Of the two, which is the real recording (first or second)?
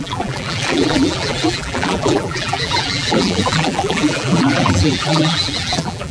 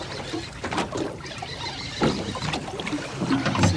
second